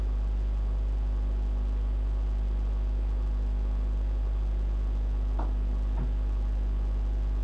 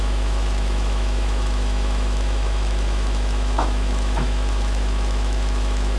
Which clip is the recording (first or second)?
first